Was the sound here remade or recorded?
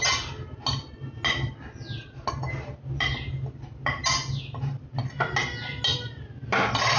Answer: recorded